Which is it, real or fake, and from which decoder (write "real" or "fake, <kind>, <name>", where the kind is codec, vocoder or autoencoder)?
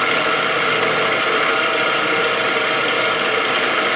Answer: real